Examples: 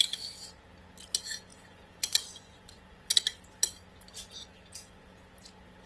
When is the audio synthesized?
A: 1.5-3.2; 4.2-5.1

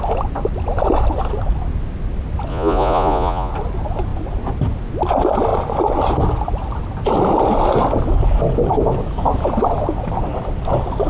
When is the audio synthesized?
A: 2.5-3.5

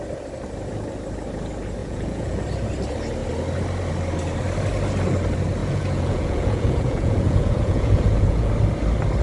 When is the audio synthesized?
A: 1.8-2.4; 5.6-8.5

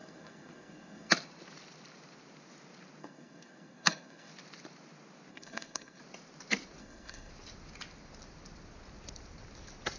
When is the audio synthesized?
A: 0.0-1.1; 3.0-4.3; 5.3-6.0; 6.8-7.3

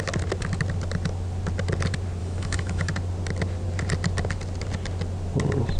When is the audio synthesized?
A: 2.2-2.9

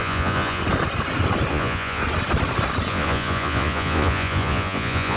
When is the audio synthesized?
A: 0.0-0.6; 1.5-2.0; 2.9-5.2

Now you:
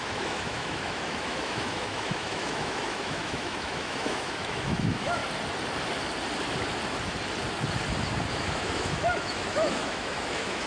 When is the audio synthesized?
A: 0.0-5.2; 8.3-10.7

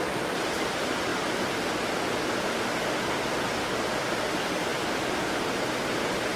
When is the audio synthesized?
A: none